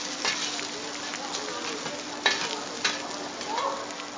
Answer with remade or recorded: recorded